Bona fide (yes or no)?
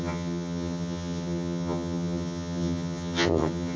no